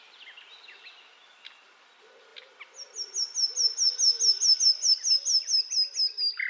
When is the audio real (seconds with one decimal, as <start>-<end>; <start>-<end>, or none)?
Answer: 0.0-6.5